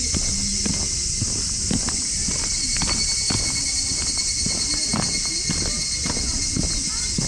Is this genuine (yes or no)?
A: yes